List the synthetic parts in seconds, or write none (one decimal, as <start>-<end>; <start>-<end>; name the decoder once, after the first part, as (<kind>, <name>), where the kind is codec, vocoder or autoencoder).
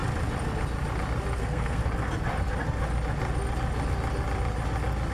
1.4-1.8 (codec, SNAC)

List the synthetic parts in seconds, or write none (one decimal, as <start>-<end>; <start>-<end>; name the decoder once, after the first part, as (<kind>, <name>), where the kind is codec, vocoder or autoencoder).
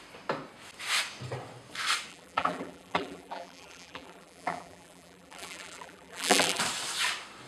2.1-6.6 (vocoder, BigVGAN v2)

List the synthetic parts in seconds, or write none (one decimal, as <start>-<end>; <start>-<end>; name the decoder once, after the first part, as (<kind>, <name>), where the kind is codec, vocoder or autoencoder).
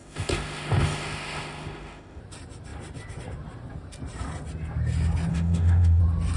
0.0-2.2 (autoencoder, DAC-VAE); 5.3-6.0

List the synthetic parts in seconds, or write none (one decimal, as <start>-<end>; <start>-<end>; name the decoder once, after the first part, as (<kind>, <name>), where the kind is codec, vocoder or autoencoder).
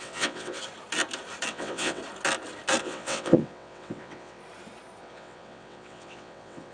0.0-0.6 (vocoder, WaveNeXt); 1.5-2.0; 2.8-4.4; 5.0-6.7